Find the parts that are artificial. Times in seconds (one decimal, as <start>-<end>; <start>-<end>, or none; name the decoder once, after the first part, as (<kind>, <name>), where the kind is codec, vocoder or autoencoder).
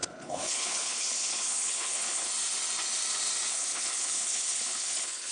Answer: 0.0-2.3 (codec, HILCodec); 3.5-5.3